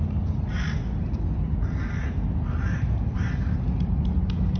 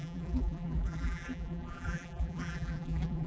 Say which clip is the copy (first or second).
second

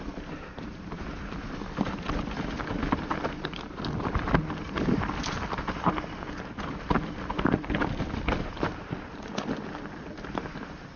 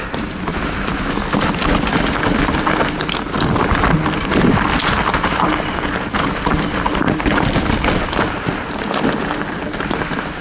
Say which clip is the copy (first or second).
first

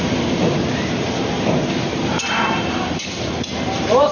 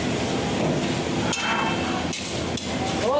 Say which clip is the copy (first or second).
first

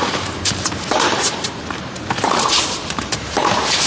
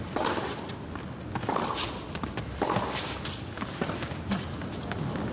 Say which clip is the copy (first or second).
first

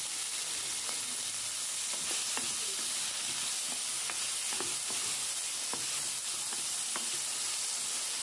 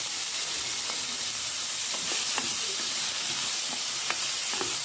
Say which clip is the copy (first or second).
second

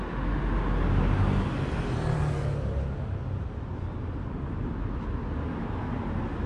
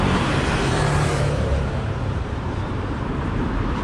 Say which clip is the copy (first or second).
second